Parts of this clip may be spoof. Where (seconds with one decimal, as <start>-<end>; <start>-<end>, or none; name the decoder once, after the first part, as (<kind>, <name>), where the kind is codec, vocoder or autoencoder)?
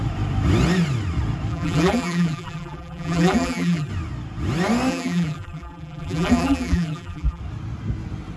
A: 1.5-3.9 (vocoder, BigVGAN v2); 4.9-7.4